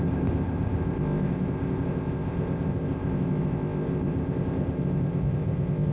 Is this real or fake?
fake